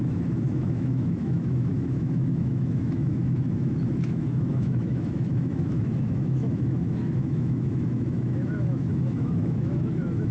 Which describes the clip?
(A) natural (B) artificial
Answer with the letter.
B